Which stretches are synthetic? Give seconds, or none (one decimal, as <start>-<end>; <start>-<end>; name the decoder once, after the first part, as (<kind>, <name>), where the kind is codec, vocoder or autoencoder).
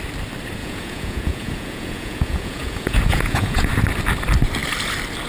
0.6-3.7 (vocoder, Vocos)